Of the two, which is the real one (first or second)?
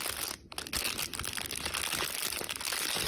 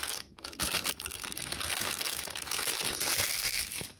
first